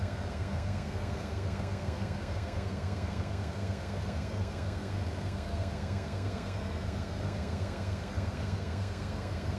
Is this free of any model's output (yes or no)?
no